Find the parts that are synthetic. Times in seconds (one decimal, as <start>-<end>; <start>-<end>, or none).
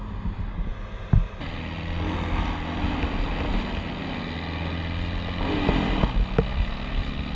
none